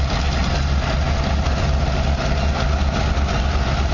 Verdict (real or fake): real